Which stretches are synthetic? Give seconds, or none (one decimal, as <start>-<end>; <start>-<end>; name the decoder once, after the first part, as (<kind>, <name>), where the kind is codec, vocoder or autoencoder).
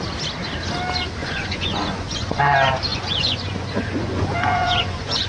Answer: 1.2-2.4 (vocoder, Vocos); 2.9-5.3